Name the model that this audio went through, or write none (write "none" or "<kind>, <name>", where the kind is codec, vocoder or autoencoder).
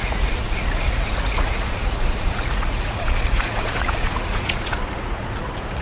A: vocoder, Vocos